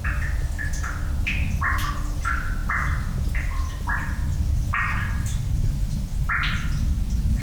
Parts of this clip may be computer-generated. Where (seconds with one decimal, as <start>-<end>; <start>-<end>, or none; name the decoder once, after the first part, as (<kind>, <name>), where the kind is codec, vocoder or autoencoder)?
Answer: none